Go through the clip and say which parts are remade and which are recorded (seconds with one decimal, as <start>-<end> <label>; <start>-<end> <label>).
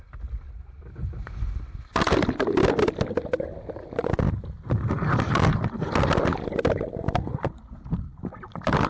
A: 0.0-8.9 recorded